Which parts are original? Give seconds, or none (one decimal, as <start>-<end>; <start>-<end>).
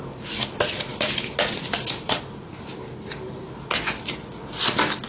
0.0-5.1